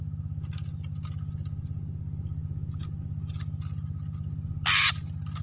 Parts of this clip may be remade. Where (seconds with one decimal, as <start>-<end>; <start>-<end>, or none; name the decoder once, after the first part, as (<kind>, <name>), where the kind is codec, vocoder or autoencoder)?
none